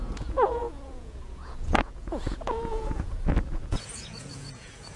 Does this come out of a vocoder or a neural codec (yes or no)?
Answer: yes